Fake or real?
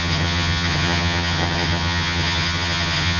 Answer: fake